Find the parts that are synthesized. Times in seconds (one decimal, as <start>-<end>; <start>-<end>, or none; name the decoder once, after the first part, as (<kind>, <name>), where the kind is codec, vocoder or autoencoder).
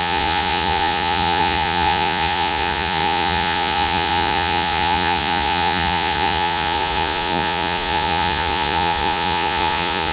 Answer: 0.0-10.1 (vocoder, Vocos)